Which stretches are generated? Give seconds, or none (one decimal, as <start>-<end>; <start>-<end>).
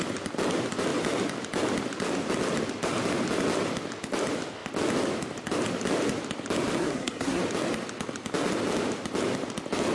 6.8-7.4